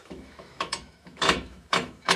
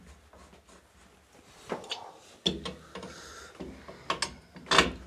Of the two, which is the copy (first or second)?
first